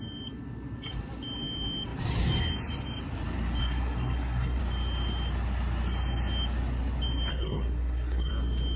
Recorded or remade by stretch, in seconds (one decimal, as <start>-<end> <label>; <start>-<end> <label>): 0.0-3.6 recorded; 3.6-4.6 remade; 4.6-7.3 recorded; 7.3-8.3 remade; 8.3-8.8 recorded